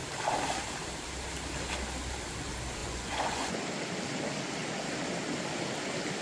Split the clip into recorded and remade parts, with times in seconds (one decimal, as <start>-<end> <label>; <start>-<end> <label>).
0.0-2.8 recorded; 2.8-3.6 remade; 3.6-6.2 recorded